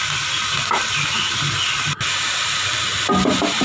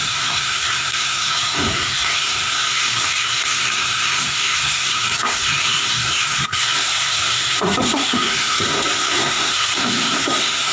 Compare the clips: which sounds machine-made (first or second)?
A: second